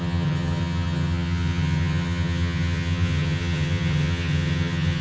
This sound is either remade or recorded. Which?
remade